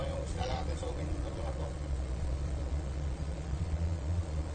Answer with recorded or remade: remade